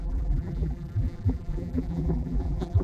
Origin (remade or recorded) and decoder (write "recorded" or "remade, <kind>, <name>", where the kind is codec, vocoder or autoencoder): remade, vocoder, BigVGAN v2